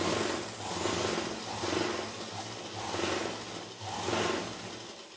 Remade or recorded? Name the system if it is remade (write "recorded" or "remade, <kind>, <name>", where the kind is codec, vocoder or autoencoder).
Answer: recorded